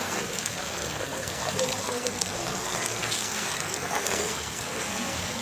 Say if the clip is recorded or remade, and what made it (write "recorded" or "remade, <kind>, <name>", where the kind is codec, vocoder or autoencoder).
remade, codec, SNAC